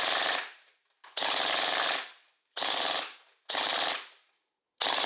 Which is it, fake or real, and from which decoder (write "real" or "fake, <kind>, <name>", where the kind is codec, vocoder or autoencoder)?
real